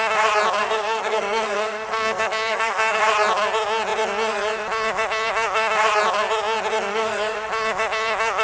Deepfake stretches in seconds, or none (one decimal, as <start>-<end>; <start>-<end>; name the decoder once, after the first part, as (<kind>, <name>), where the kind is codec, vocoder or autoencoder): 0.6-3.0 (codec, SNAC); 6.9-7.5